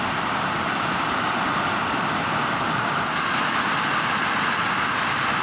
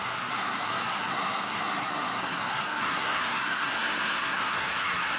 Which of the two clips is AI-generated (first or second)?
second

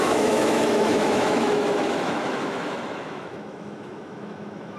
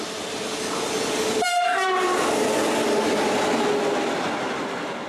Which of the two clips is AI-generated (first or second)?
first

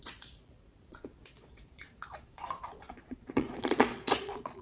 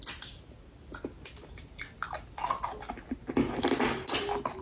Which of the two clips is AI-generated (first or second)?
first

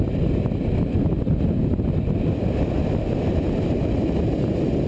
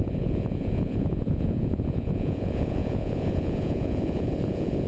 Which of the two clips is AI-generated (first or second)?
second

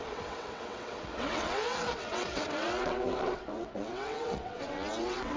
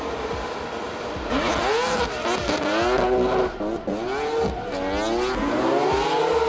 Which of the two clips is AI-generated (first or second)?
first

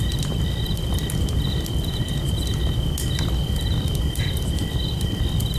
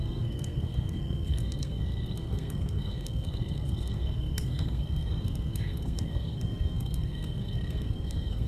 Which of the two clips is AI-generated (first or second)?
second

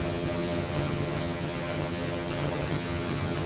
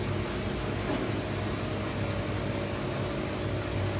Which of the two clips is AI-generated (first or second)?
first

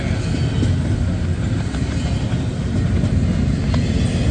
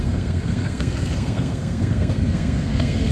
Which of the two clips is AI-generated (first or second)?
second